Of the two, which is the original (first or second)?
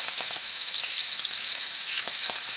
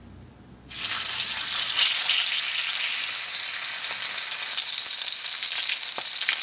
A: second